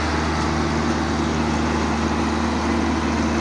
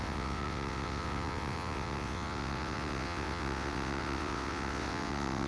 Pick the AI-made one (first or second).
second